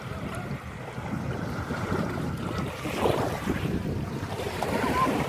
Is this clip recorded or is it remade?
remade